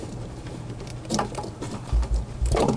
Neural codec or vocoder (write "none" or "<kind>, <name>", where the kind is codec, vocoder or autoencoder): vocoder, BigVGAN v2